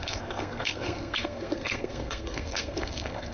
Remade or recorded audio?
remade